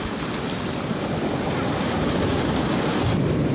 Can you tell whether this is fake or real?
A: real